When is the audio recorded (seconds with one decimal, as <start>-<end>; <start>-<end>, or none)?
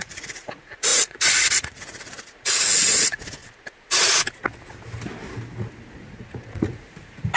3.4-6.0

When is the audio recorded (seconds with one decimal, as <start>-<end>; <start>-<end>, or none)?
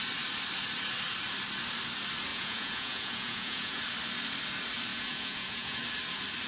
0.0-2.3; 3.8-4.9; 5.8-6.5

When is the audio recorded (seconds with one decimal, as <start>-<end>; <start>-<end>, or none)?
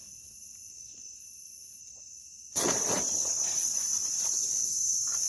0.0-0.7; 1.2-1.8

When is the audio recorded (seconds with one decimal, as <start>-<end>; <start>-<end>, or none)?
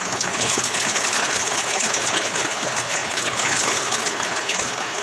none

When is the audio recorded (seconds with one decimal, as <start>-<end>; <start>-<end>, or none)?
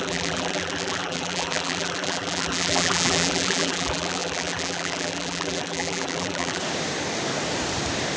6.6-8.2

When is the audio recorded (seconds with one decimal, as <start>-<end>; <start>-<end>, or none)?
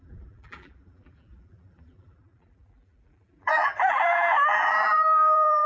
none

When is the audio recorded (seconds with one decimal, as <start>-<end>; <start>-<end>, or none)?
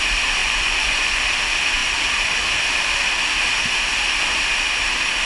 0.0-0.4; 1.2-5.3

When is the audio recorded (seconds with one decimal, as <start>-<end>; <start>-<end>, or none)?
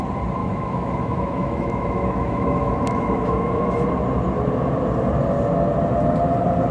0.0-0.4; 3.8-6.7